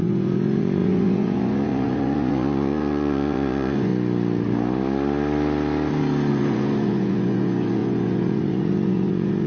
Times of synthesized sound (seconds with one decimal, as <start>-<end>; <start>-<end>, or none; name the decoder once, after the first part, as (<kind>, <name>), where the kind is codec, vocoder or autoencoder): 0.0-3.9 (vocoder, Vocos); 6.3-9.5